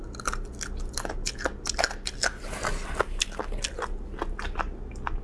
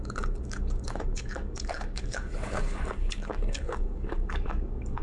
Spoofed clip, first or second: second